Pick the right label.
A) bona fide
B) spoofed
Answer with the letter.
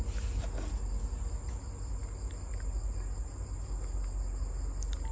A